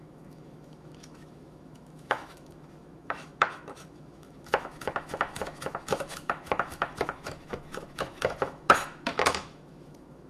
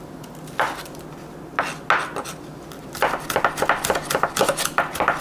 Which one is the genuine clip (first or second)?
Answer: second